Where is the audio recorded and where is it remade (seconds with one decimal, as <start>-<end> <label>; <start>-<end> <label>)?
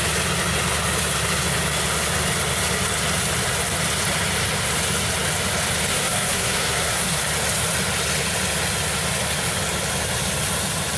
0.0-5.9 recorded; 5.9-7.2 remade; 7.2-11.0 recorded